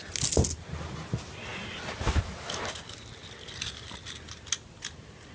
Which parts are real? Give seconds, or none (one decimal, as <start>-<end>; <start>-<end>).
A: 0.0-5.3